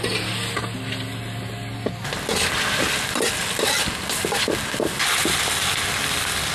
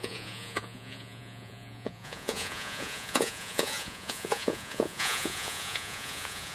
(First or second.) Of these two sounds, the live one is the first